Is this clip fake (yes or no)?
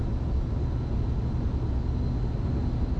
no